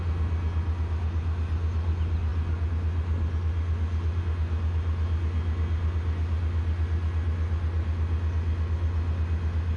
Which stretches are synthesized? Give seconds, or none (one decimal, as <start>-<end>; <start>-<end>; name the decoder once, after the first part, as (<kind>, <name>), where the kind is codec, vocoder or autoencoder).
none

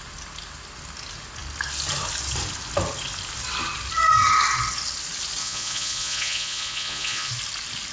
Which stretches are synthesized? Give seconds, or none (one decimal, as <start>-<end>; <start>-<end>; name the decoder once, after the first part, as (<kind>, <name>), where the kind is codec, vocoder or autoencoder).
5.4-7.3 (vocoder, Vocos)

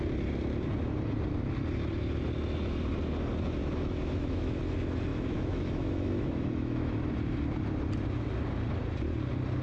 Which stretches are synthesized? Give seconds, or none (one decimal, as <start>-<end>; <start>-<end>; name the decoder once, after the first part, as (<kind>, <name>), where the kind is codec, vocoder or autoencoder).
3.6-4.6 (autoencoder, DAC-VAE); 5.1-6.9

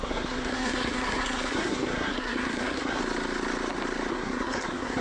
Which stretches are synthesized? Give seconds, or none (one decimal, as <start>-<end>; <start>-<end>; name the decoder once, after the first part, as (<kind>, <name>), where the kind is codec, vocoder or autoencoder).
0.0-3.0 (codec, SNAC); 4.1-5.0

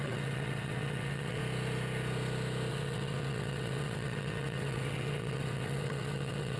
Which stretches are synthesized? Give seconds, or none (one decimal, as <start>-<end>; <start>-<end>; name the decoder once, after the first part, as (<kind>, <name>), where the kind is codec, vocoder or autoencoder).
0.0-1.4 (vocoder, WaveNeXt); 2.7-6.6

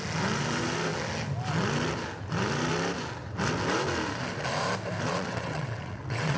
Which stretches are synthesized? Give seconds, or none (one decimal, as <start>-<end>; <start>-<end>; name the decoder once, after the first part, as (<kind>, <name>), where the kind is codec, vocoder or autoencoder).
5.1-6.4 (vocoder, WaveNeXt)

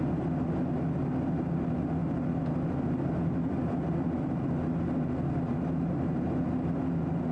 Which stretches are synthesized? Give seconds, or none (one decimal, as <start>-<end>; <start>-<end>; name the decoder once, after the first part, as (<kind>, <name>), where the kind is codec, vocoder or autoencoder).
none

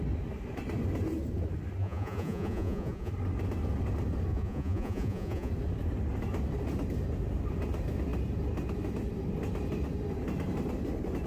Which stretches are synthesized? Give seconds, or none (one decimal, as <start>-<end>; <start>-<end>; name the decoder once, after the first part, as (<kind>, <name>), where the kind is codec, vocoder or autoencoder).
1.8-3.1 (vocoder, Vocos); 4.3-5.5